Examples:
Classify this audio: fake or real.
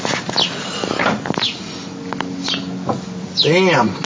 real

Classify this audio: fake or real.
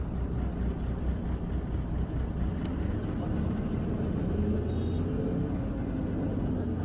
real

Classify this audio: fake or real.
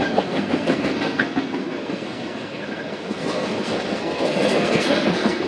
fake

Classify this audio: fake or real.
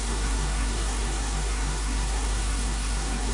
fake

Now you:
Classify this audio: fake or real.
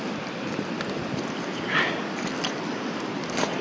real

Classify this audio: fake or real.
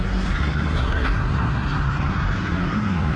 fake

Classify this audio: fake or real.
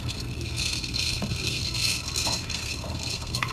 fake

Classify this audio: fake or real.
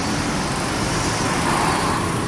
real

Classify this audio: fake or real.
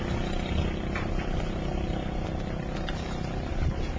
real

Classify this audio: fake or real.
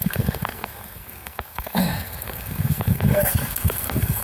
fake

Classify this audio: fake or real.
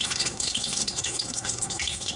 fake